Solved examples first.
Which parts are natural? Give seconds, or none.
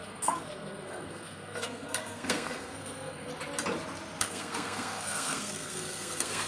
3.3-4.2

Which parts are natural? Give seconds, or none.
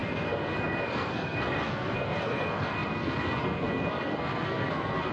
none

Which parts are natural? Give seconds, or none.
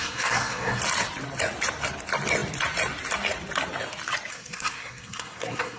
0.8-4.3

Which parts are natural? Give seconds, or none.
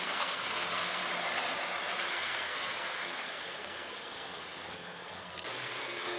1.0-2.1